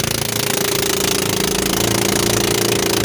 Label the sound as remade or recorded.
recorded